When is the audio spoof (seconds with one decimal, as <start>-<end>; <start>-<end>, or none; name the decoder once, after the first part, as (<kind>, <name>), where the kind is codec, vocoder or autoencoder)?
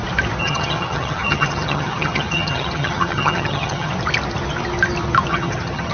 0.4-3.9 (vocoder, HiFi-GAN); 5.3-5.9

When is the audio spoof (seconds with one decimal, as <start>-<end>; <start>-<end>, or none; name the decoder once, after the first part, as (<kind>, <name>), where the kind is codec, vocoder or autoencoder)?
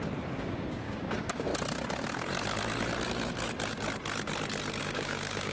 0.0-1.5 (codec, DAC); 4.8-5.5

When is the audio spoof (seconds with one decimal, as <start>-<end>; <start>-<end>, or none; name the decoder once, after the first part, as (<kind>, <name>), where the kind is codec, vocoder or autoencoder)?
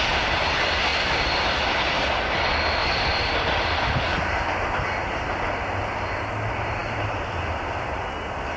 2.8-4.1 (vocoder, BigVGAN v2); 6.8-8.6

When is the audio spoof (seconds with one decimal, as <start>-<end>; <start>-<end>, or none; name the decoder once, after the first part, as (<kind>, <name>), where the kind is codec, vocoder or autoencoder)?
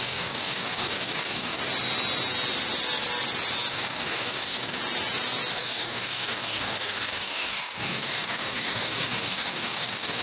0.0-1.6 (codec, DAC); 3.7-4.8; 5.5-10.2